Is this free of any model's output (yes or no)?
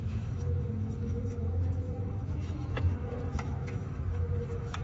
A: no